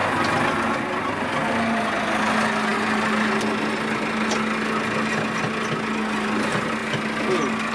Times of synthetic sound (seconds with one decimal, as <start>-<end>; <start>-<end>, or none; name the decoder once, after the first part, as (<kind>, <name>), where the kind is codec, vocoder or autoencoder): none

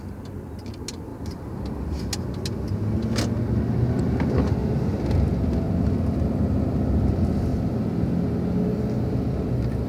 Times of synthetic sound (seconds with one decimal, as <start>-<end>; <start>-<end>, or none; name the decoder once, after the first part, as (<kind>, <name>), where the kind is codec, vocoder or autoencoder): none

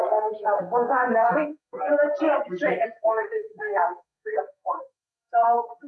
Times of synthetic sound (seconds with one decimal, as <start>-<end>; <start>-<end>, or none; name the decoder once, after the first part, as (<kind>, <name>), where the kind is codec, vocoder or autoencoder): 0.0-1.9 (codec, SNAC); 2.7-5.9

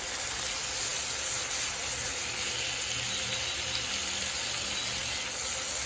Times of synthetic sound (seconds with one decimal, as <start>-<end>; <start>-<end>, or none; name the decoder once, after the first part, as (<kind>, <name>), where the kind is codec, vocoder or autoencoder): none

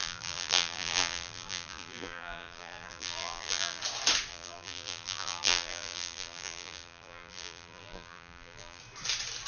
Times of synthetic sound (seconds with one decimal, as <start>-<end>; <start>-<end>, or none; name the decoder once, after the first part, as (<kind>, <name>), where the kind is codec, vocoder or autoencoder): 0.0-3.8 (vocoder, BigVGAN v2); 4.3-8.8

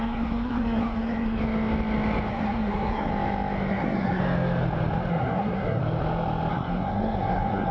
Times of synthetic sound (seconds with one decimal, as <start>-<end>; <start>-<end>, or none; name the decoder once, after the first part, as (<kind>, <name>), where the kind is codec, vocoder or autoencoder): 0.0-1.4 (codec, SNAC); 2.3-3.1; 3.7-4.2; 5.1-5.8; 6.5-7.7

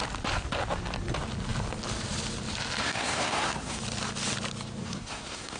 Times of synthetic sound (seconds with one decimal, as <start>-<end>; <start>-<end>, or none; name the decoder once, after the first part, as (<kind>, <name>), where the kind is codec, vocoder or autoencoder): 2.8-3.8 (codec, SNAC); 4.8-5.6